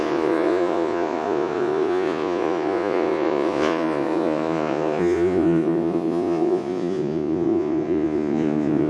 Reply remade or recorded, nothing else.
remade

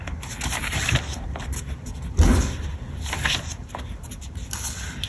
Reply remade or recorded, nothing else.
recorded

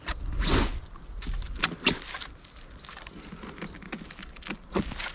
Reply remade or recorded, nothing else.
recorded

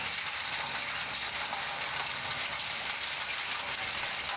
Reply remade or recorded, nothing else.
recorded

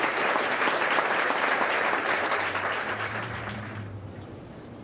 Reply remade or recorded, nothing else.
remade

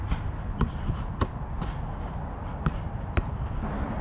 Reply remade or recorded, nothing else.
recorded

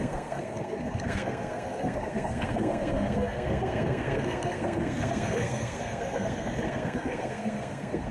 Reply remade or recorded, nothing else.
remade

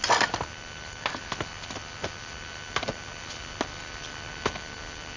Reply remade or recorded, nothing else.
recorded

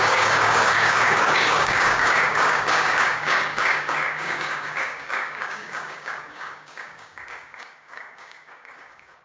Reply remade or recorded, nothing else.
remade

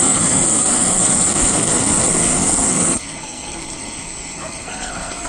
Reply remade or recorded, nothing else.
remade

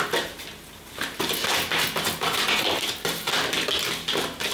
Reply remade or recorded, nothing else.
recorded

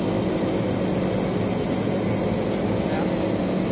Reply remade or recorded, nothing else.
recorded